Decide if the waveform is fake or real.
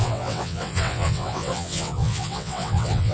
fake